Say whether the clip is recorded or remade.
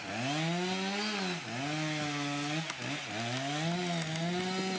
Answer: recorded